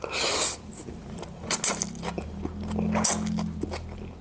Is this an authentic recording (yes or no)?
yes